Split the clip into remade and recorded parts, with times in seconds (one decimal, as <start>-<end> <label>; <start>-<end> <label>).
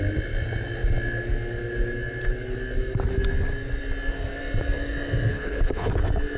0.0-5.3 recorded; 5.3-5.9 remade; 5.9-6.4 recorded